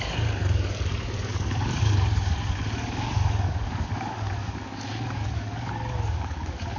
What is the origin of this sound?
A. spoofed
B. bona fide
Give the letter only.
A